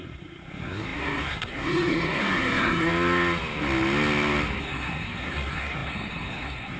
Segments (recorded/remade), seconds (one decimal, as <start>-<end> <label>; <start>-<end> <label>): 0.0-2.9 remade; 2.9-4.6 recorded; 4.6-6.8 remade